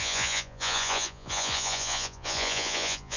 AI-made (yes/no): yes